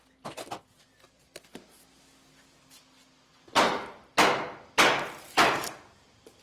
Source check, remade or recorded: recorded